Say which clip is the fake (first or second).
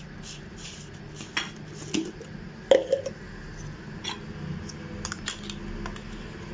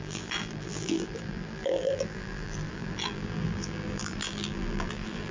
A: second